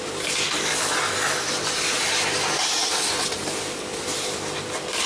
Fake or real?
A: real